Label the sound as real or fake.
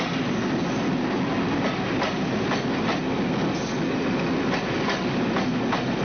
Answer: real